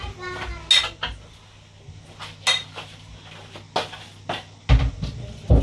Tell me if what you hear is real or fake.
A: real